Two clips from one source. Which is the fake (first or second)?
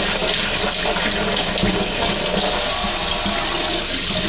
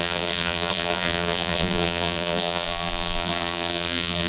second